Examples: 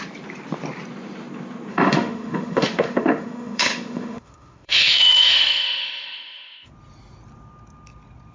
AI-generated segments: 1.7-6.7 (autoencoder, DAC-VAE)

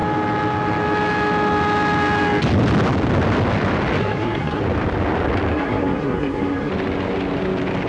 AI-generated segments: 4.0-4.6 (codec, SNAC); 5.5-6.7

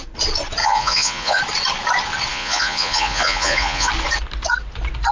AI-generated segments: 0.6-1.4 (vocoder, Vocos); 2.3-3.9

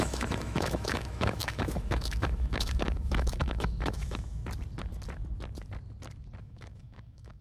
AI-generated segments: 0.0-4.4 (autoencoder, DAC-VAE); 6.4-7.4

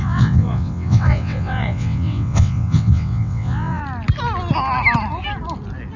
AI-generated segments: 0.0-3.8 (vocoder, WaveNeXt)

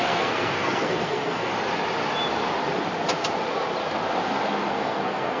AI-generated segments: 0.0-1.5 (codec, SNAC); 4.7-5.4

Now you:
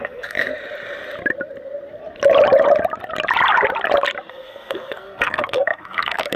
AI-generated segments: 0.0-0.5 (codec, SNAC); 4.3-6.4